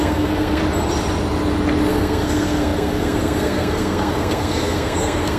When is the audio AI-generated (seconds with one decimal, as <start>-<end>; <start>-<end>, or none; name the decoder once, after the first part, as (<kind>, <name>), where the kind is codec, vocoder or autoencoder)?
0.0-0.6 (codec, SNAC); 1.9-5.4